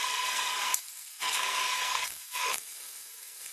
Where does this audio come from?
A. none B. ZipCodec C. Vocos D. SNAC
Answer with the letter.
D